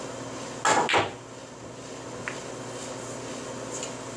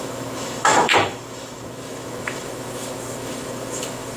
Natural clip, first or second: first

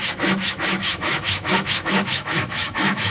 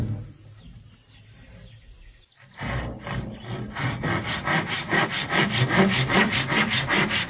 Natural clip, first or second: second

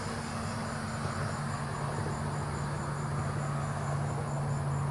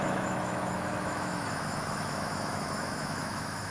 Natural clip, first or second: first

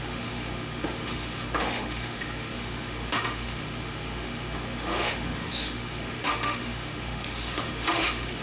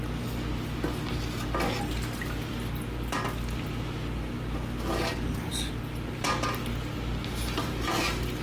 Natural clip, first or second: second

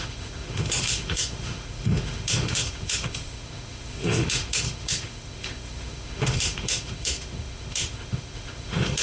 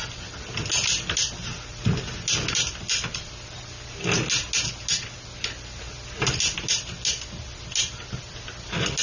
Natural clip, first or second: second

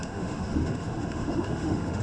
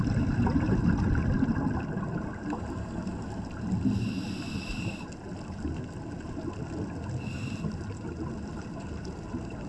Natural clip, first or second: second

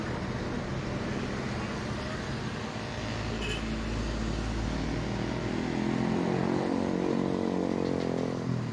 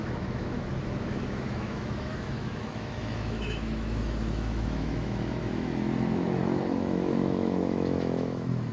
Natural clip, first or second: first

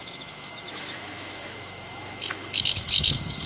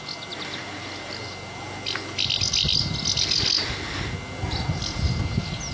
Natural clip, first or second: second